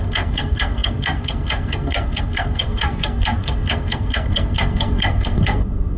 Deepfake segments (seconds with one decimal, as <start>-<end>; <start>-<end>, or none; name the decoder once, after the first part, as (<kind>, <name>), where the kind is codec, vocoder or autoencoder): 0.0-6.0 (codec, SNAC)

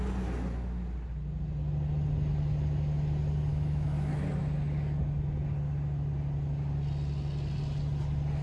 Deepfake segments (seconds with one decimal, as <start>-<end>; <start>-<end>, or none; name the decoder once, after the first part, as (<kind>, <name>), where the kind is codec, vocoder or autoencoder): 3.5-4.1 (autoencoder, DAC-VAE)

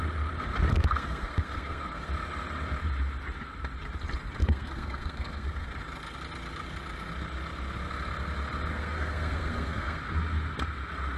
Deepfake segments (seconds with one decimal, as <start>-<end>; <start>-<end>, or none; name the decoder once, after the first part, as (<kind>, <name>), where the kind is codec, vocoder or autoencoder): 0.7-2.1 (codec, SNAC); 4.4-5.8; 8.7-10.0